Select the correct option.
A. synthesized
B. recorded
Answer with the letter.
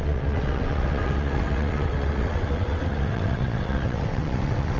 A